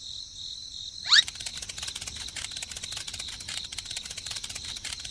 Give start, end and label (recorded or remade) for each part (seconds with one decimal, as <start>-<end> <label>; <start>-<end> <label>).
0.0-1.5 remade; 1.5-3.0 recorded; 3.0-5.1 remade